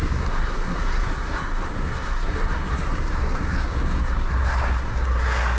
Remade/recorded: remade